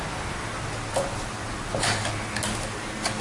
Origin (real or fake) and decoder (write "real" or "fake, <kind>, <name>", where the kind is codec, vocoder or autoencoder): real